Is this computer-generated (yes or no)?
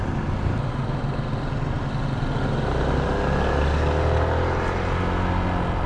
no